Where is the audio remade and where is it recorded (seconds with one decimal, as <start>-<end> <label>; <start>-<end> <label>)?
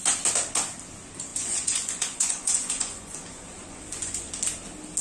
0.0-1.3 recorded; 1.3-4.3 remade; 4.3-5.0 recorded